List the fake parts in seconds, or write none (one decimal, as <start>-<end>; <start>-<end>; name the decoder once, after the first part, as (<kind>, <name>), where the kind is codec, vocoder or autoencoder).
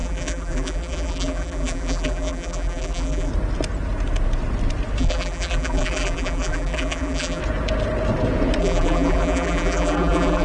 0.0-3.3 (vocoder, BigVGAN v2); 5.0-7.4; 8.6-10.4